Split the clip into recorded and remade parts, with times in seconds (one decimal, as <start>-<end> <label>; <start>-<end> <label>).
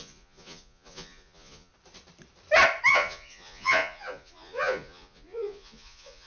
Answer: 0.0-1.7 remade; 1.7-2.9 recorded; 2.9-6.3 remade